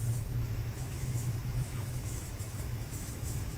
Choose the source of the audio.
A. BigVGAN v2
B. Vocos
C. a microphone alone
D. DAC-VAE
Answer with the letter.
D